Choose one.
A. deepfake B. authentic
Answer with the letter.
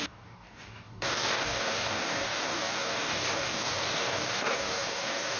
A